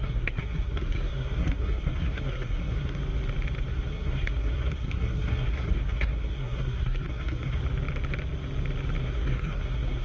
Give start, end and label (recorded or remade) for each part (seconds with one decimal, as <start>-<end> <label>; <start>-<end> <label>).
0.0-3.0 remade; 3.0-3.7 recorded; 3.7-7.6 remade; 7.6-9.0 recorded; 9.0-10.0 remade